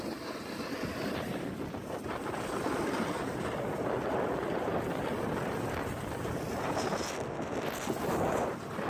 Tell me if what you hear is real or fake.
real